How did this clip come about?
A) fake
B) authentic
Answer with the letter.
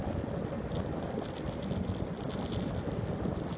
B